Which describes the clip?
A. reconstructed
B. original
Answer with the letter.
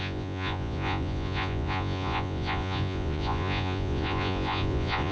A